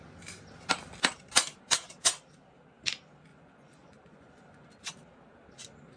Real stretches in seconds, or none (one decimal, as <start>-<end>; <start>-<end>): 0.0-3.3; 4.7-6.0